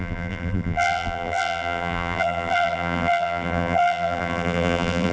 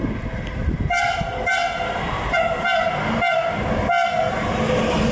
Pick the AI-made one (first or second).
first